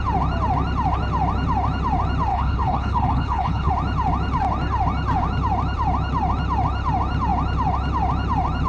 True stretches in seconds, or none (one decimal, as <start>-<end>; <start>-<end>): 0.0-2.3; 3.7-8.7

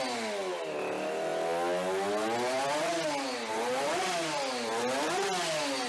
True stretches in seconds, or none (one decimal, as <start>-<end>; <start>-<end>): 0.0-5.9

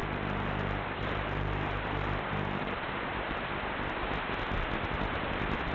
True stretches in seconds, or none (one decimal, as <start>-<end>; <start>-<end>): 3.4-5.7

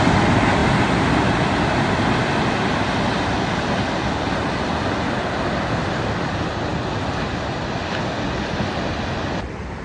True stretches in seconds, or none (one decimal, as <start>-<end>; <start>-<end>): 0.0-9.8

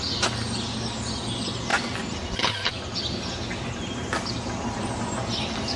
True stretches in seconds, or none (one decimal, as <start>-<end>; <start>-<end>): 0.0-5.8